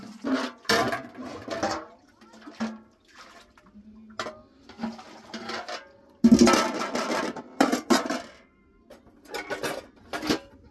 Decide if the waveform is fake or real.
real